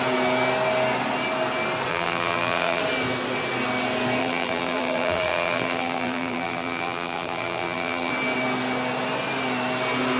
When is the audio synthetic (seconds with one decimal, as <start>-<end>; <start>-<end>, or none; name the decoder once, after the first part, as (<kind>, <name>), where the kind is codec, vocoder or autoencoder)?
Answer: 1.9-2.8 (vocoder, BigVGAN v2); 4.2-8.1